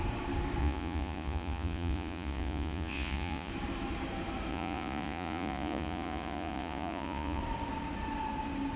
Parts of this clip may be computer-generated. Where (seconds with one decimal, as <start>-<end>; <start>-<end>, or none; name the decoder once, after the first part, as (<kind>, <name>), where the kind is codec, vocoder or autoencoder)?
0.6-3.5 (vocoder, Vocos); 4.5-7.4